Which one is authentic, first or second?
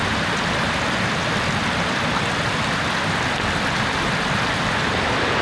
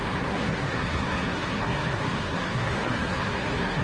first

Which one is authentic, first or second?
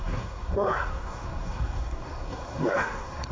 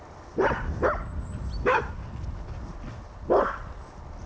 second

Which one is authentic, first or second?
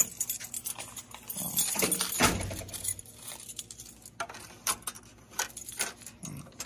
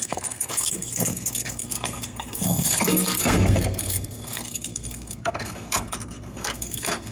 first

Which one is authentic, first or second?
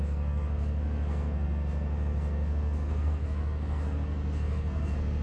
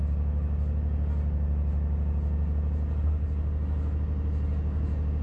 second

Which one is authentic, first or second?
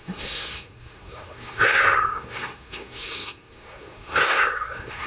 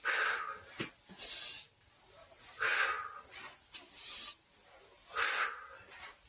second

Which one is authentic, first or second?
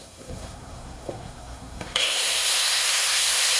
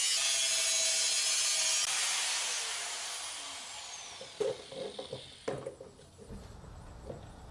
second